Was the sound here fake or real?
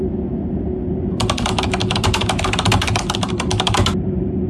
real